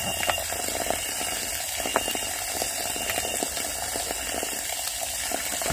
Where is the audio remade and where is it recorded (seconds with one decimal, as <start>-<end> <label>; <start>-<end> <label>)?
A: 0.0-5.7 recorded